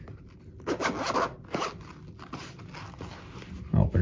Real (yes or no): yes